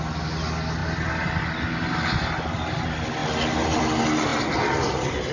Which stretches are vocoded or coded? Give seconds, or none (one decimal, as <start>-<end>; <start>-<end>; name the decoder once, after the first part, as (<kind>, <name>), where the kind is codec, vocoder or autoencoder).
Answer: none